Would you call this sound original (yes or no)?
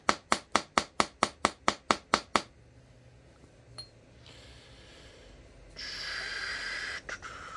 yes